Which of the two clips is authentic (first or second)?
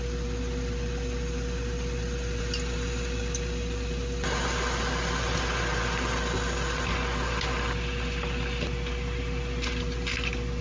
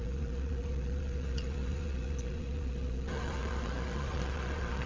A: first